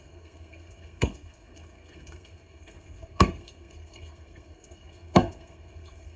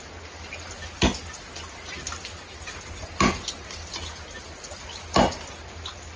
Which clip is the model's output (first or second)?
first